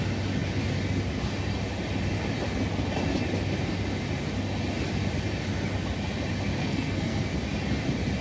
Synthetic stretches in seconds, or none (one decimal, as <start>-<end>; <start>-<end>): 6.6-7.2